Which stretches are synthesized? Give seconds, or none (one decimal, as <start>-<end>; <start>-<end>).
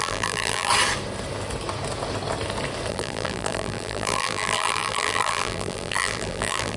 0.0-0.7; 2.9-6.8